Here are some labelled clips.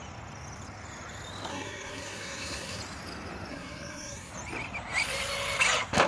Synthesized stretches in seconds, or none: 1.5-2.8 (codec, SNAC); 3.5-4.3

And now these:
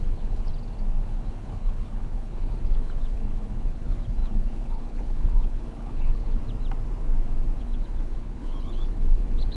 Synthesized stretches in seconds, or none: 0.0-0.5 (codec, HILCodec); 1.0-6.4; 7.6-9.6

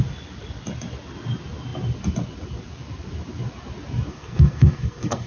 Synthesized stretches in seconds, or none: 4.1-5.3 (codec, SNAC)

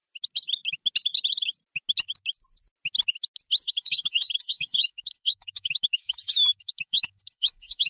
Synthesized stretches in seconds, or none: 3.7-7.9 (codec, DAC)

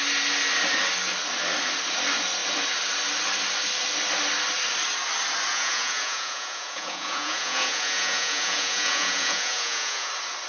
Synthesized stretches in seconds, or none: 5.5-10.1 (vocoder, Vocos)

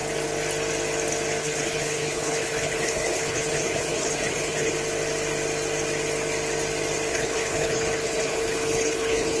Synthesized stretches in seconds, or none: 1.4-4.7 (codec, HILCodec); 7.1-9.4